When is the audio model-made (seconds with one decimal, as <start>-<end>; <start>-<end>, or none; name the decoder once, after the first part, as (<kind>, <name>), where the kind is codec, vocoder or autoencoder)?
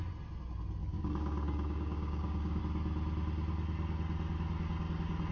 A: 0.8-2.6 (codec, DAC)